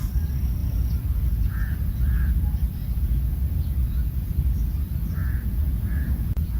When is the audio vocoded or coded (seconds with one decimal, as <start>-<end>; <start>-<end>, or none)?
0.6-2.3; 2.8-4.3; 5.2-6.6